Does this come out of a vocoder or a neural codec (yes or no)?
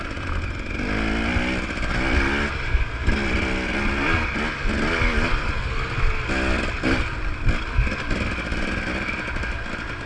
no